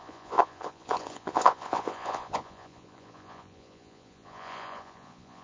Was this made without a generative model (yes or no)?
no